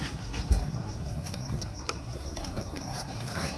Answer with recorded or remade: remade